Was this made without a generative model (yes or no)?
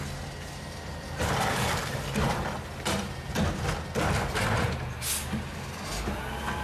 yes